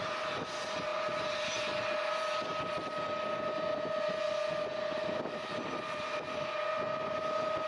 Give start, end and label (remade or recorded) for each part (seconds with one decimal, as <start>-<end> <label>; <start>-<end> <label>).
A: 0.0-7.7 recorded